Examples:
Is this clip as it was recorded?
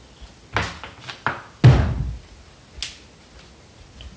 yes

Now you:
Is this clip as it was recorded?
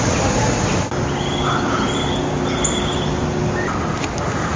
yes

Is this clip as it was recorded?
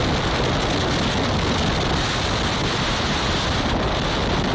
yes